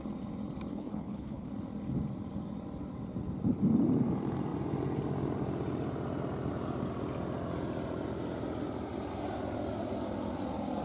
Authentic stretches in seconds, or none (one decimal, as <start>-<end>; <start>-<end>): 0.0-0.7; 1.5-10.8